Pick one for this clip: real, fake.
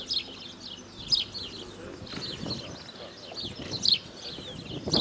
real